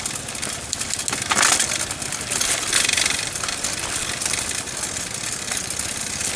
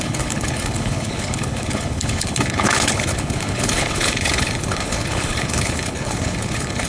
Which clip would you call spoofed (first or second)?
second